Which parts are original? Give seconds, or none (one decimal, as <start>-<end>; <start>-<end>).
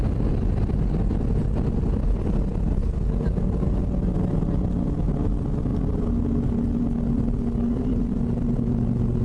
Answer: 0.0-9.2